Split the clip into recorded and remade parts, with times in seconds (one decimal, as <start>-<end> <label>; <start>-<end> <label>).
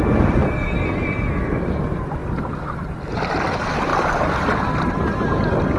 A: 0.0-2.2 remade; 2.2-3.1 recorded; 3.1-3.9 remade; 3.9-5.8 recorded